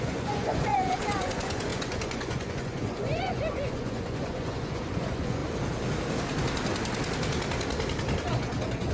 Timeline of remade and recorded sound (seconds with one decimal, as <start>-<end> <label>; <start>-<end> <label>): 0.0-5.4 remade; 5.4-8.3 recorded; 8.3-8.9 remade